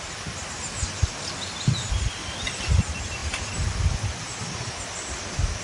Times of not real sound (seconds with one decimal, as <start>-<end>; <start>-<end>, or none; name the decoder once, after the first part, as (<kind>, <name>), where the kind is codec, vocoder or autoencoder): 2.2-2.8 (vocoder, BigVGAN v2); 3.2-4.3